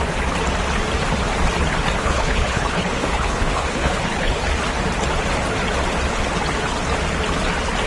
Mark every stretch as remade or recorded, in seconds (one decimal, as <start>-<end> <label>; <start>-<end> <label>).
0.0-2.0 recorded; 2.0-4.4 remade; 4.4-7.9 recorded